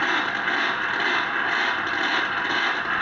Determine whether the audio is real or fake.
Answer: real